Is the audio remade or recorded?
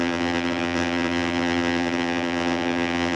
remade